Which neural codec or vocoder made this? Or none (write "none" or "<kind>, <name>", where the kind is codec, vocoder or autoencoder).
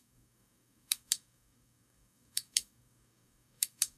codec, DAC